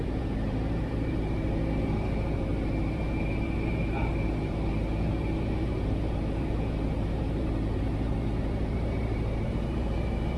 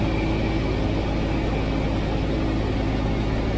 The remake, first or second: first